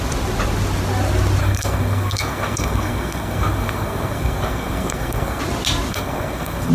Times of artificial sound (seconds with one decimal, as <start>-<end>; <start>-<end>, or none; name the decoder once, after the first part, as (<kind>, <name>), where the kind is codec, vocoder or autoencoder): 1.4-5.4 (codec, SNAC); 5.9-6.7